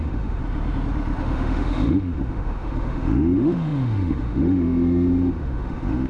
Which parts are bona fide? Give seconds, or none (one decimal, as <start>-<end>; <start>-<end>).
0.4-1.2